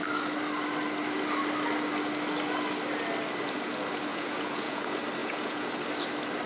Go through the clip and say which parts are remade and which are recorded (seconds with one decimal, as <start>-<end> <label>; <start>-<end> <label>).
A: 0.0-4.1 recorded; 4.1-4.8 remade; 4.8-5.2 recorded; 5.2-5.7 remade; 5.7-6.5 recorded